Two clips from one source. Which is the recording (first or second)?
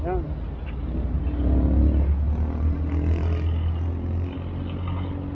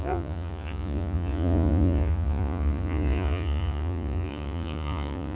first